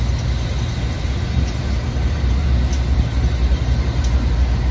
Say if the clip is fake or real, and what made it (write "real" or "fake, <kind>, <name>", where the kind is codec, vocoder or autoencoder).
real